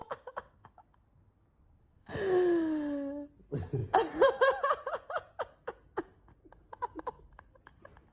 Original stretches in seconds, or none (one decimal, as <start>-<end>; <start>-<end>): 0.0-3.8; 7.0-8.1